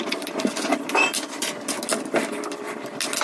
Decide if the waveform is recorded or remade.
recorded